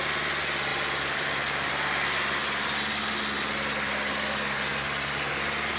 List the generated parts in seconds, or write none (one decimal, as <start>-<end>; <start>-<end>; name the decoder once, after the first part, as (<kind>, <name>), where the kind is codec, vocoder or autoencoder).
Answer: 0.7-1.7 (vocoder, BigVGAN v2)